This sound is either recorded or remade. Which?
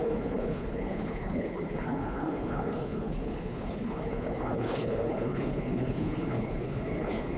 remade